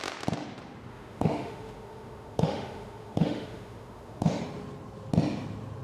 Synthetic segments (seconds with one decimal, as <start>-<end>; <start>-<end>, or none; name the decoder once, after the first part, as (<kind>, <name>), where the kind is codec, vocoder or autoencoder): 0.9-4.4 (autoencoder, DAC-VAE)